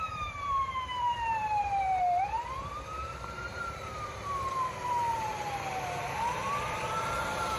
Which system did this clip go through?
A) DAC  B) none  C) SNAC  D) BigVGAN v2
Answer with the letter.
D